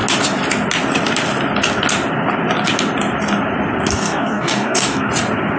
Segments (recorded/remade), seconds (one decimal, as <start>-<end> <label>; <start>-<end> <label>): 0.0-3.9 recorded; 3.9-5.1 remade; 5.1-5.6 recorded